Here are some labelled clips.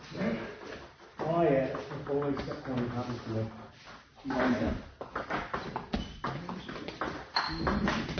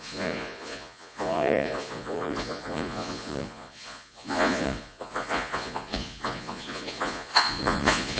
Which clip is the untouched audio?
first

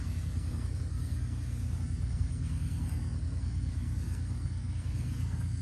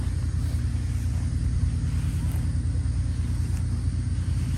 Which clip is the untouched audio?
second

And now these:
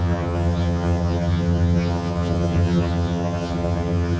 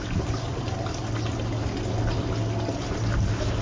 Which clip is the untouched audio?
second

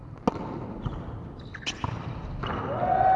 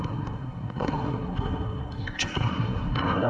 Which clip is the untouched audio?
first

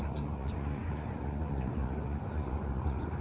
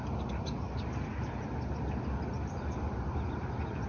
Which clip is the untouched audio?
second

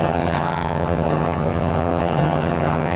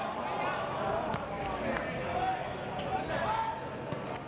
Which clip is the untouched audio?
second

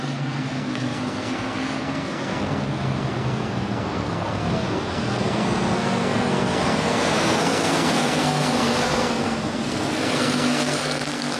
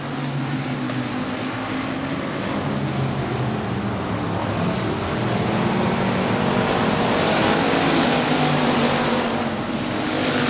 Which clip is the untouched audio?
second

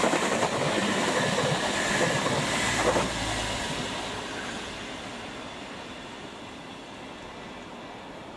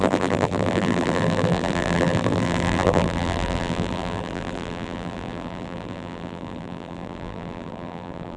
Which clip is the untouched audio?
first